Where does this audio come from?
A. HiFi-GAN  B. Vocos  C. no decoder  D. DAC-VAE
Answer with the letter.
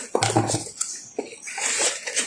C